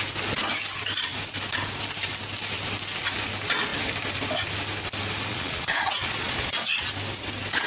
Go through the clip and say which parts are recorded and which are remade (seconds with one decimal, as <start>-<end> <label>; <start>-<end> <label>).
0.0-5.3 recorded; 5.3-6.9 remade; 6.9-7.7 recorded